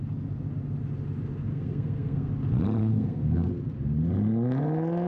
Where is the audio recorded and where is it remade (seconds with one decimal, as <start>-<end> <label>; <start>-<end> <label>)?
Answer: 0.0-1.5 recorded; 1.5-2.3 remade; 2.3-2.8 recorded; 2.8-3.5 remade; 3.5-5.1 recorded

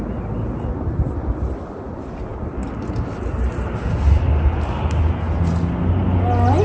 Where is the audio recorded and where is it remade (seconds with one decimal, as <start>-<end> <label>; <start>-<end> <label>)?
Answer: 0.0-6.6 recorded